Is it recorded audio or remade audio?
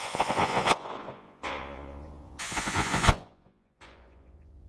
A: remade